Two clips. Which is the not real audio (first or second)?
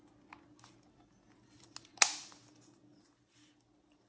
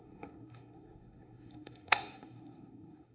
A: second